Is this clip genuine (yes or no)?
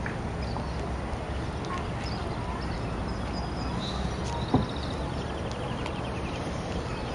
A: yes